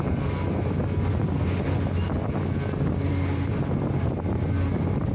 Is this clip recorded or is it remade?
recorded